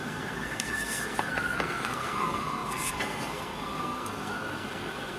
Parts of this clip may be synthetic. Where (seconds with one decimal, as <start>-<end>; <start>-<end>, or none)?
0.0-5.2